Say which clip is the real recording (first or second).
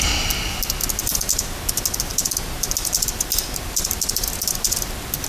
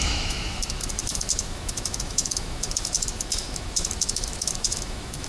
first